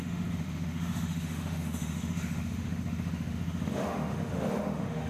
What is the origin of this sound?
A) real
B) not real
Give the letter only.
B